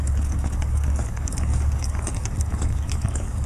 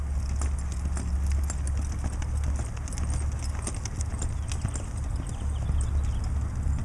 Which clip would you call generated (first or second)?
first